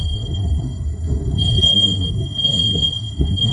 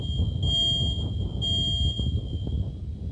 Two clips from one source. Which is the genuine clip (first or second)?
second